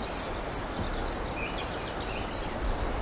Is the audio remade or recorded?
recorded